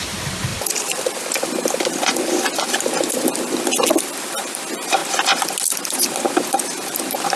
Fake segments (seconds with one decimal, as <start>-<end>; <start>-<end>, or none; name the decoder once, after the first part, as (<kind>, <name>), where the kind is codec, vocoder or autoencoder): none